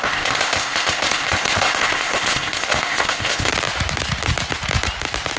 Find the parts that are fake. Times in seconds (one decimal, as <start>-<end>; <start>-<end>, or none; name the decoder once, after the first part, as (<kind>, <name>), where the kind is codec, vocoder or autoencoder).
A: 0.0-3.5 (codec, ZipCodec)